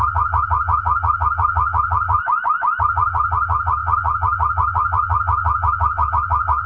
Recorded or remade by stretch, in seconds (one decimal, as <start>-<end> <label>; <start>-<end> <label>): 0.0-2.2 remade; 2.2-2.8 recorded; 2.8-6.7 remade